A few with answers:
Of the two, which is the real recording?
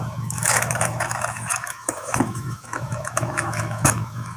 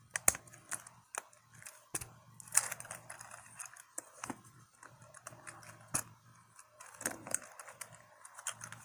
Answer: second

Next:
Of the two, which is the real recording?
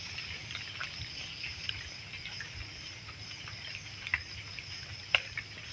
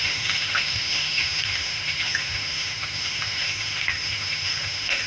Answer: first